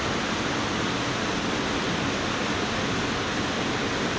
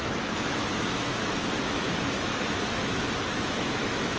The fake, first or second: second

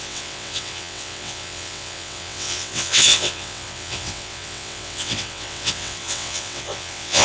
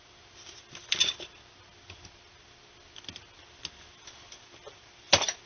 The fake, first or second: first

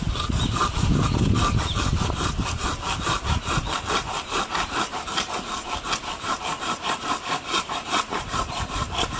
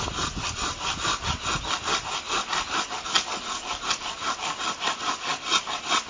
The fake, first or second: first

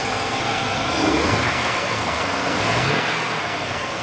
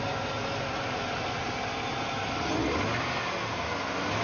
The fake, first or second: first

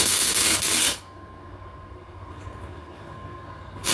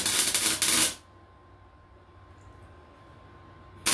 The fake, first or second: first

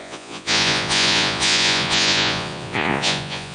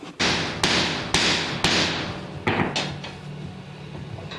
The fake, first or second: first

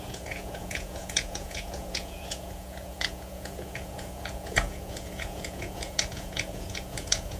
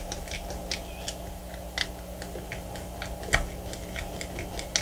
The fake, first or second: first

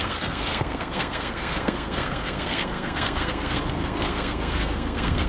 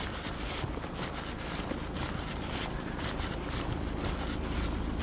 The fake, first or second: first